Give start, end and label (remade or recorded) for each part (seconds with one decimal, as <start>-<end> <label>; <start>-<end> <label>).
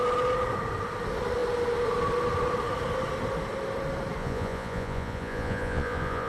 0.0-4.2 recorded; 4.2-6.3 remade